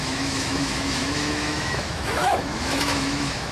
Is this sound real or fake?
fake